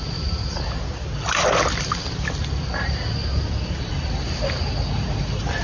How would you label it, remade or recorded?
recorded